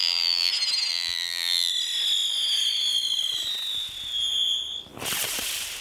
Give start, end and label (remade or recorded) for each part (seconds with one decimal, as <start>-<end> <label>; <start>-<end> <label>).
0.0-0.5 remade; 0.5-0.9 recorded; 0.9-1.7 remade; 1.7-5.8 recorded